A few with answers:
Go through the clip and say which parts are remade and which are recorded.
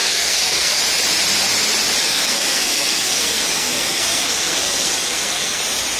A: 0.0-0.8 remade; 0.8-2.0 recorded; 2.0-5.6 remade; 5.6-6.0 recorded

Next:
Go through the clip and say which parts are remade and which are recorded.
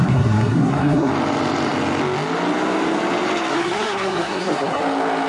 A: 0.0-1.1 remade; 1.1-3.5 recorded; 3.5-4.8 remade; 4.8-5.3 recorded